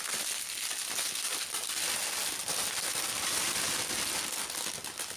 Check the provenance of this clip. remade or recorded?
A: recorded